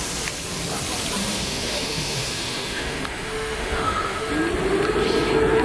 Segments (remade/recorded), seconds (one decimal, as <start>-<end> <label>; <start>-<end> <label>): 0.0-1.2 recorded; 1.2-4.3 remade; 4.3-5.6 recorded